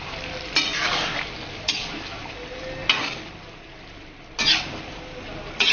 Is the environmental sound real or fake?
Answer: real